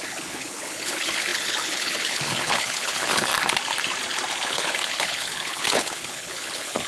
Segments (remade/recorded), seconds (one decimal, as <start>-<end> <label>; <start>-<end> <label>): 0.0-3.3 remade; 3.3-4.3 recorded; 4.3-6.9 remade